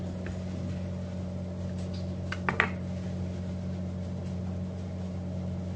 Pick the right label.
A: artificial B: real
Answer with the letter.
B